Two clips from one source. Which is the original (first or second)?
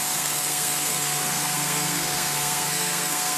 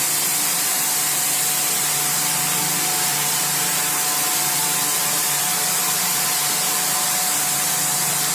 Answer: second